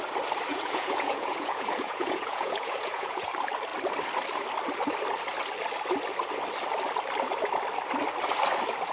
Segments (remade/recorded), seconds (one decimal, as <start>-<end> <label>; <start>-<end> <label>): 0.0-0.5 recorded; 0.5-3.3 remade; 3.3-8.9 recorded